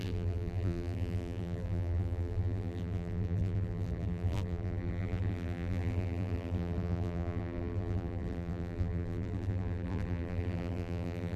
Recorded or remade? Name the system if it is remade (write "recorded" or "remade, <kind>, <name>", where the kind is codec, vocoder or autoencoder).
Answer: remade, vocoder, BigVGAN v2